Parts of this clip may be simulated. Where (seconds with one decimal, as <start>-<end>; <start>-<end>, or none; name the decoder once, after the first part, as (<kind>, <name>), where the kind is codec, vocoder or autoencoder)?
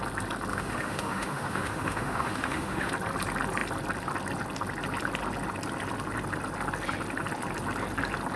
0.5-2.9 (autoencoder, DAC-VAE)